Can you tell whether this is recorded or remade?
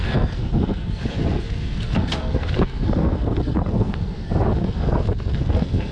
remade